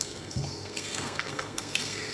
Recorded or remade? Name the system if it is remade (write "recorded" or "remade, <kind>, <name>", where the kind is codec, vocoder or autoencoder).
remade, codec, SNAC